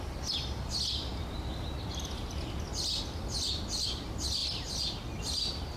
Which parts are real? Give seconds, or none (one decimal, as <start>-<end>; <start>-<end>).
0.0-5.8